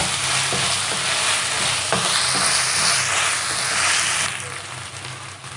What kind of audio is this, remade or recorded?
recorded